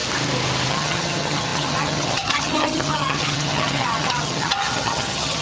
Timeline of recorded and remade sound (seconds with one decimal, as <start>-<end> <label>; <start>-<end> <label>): 0.0-0.7 recorded; 0.7-5.4 remade